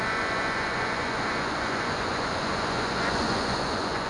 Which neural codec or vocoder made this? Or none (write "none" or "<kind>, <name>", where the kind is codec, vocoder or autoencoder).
vocoder, Vocos